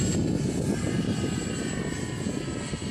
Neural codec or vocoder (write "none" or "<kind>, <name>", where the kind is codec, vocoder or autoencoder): none